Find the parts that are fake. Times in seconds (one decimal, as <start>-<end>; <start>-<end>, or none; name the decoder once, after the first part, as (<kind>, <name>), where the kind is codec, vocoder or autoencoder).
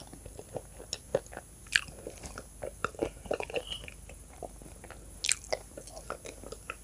2.8-5.2 (vocoder, BigVGAN v2)